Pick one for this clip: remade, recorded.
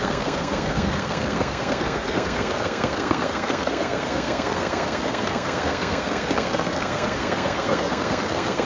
remade